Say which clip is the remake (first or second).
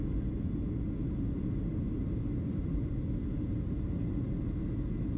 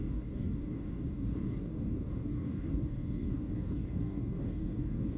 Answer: second